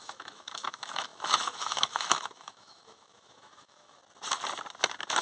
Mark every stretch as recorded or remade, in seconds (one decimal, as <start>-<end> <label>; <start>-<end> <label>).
0.0-4.0 remade; 4.0-5.2 recorded